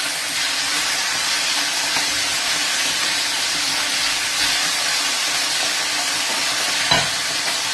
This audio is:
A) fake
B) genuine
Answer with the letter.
A